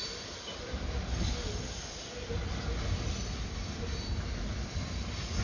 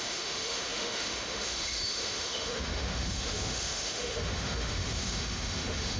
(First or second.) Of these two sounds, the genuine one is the first